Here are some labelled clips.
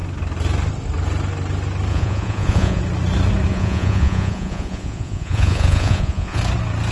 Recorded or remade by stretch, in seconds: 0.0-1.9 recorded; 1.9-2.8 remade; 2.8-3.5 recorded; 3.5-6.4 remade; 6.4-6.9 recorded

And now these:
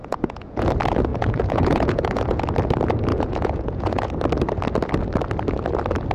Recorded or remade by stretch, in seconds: 0.0-0.7 remade; 0.7-1.1 recorded; 1.1-2.4 remade; 2.4-3.1 recorded; 3.1-4.1 remade; 4.1-6.1 recorded

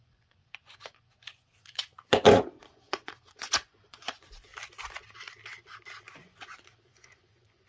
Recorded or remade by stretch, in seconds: 0.0-4.5 remade; 4.5-6.1 recorded; 6.1-7.7 remade

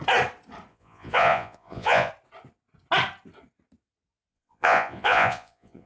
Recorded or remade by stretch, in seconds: 0.0-0.7 recorded; 0.7-2.1 remade; 2.1-4.3 recorded; 4.3-5.9 remade

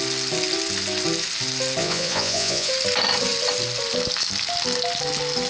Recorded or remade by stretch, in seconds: 0.0-1.8 recorded; 1.8-2.7 remade; 2.7-5.5 recorded

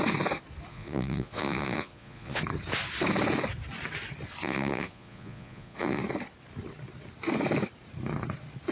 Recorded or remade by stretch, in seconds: 0.0-0.7 recorded; 0.7-2.4 remade; 2.4-4.4 recorded; 4.4-6.0 remade; 6.0-8.7 recorded